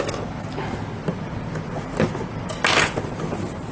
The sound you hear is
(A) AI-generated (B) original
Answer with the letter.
B